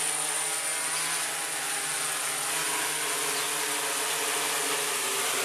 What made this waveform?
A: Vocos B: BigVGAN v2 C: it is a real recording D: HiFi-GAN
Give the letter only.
C